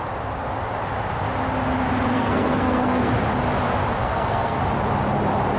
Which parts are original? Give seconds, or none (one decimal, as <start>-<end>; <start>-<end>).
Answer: 0.0-2.1; 3.1-4.0; 4.6-5.6